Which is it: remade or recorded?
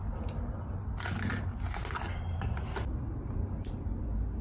recorded